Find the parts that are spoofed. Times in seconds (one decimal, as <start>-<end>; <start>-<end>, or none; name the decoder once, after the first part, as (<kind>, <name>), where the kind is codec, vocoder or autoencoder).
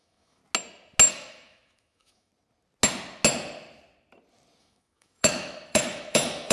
0.0-0.4 (autoencoder, DAC-VAE); 1.1-2.3; 4.6-6.5